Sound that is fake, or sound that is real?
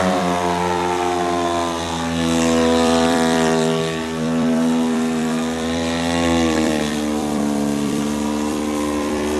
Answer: fake